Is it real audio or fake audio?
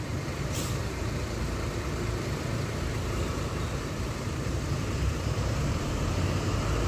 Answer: fake